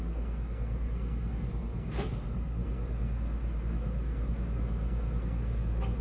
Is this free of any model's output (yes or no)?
no